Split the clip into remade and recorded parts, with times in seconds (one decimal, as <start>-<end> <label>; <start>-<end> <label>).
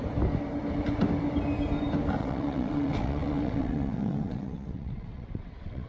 0.0-2.2 recorded; 2.2-5.9 remade